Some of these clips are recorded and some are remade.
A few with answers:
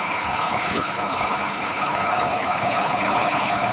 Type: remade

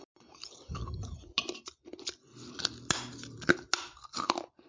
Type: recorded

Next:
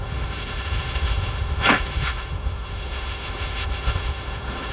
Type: remade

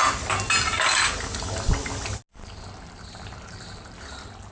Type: recorded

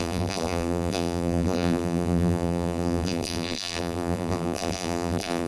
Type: remade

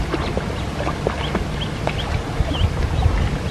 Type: remade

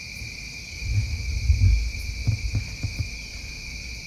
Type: recorded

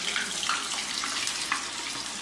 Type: recorded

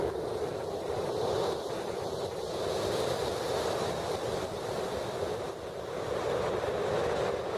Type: recorded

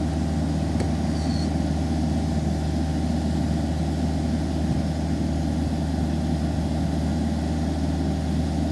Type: recorded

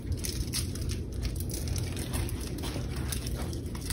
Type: recorded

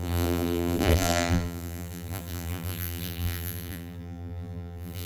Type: remade